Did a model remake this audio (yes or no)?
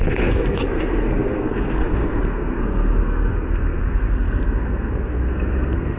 yes